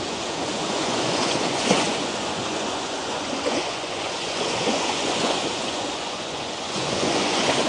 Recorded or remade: remade